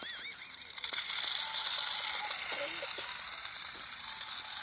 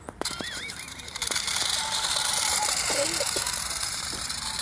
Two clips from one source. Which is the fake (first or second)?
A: second